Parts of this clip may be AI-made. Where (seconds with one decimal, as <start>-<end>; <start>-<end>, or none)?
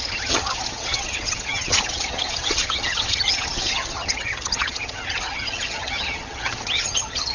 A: 0.0-7.3